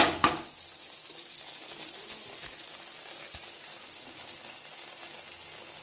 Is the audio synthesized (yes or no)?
no